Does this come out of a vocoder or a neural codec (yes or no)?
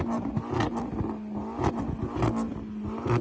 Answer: no